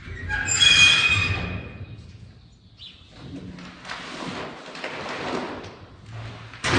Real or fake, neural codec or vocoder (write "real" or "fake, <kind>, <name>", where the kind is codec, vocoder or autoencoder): real